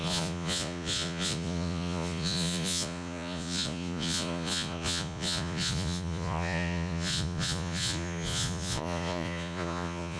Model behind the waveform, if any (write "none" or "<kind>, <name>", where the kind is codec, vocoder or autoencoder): vocoder, Vocos